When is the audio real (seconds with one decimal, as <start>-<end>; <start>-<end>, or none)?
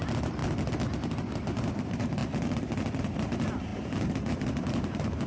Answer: 0.4-1.6; 2.2-3.0